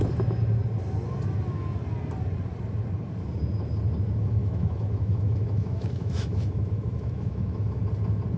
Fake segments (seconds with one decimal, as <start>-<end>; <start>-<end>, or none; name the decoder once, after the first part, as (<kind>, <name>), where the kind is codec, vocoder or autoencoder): 4.4-7.8 (autoencoder, DAC-VAE)